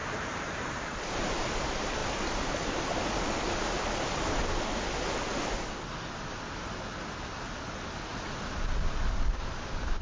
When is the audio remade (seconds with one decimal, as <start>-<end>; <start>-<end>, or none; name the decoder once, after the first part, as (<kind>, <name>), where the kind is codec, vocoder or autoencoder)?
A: 8.1-8.6 (vocoder, Vocos)